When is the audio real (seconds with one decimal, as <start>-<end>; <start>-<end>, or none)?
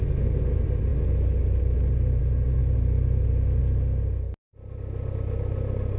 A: 0.0-6.0